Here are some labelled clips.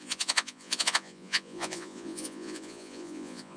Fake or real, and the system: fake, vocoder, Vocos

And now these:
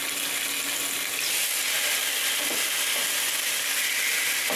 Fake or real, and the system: real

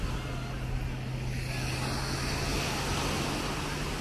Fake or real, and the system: real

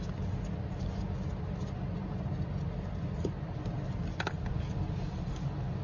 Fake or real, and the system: real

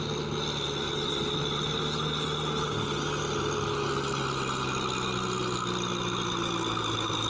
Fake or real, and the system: real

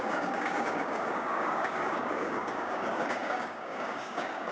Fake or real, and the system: fake, codec, DAC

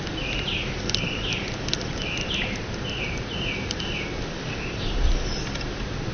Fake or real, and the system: real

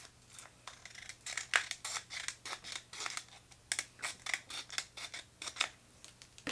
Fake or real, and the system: real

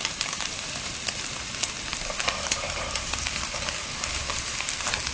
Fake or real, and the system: fake, vocoder, BigVGAN v2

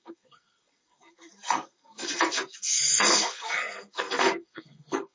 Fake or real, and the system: fake, codec, SNAC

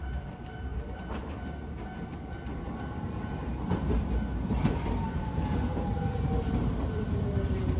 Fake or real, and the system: fake, vocoder, BigVGAN v2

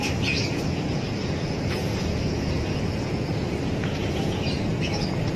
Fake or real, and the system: fake, vocoder, Vocos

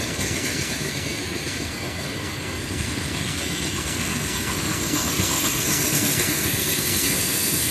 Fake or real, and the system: fake, codec, SNAC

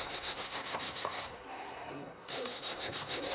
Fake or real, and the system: fake, codec, SNAC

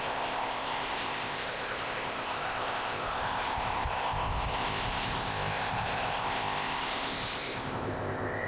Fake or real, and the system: fake, codec, ZipCodec